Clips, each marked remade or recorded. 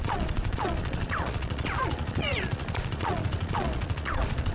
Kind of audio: remade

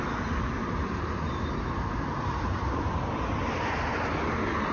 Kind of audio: recorded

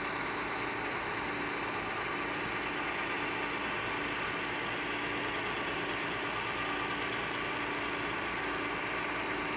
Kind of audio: recorded